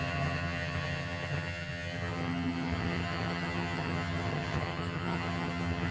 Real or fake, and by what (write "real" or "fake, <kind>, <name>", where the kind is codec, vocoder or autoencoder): fake, vocoder, HiFi-GAN